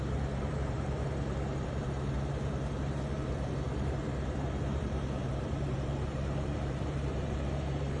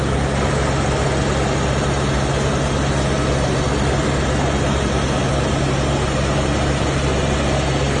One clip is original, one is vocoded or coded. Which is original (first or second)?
second